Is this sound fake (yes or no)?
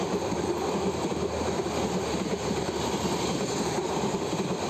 no